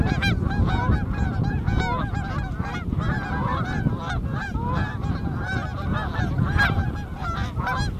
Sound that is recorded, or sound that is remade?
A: recorded